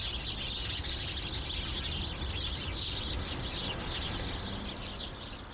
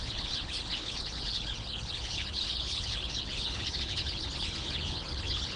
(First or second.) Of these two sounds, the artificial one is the second